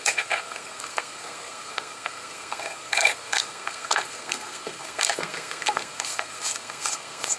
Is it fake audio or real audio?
fake